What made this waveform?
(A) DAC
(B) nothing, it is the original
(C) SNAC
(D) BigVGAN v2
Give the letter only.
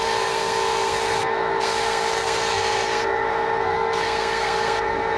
C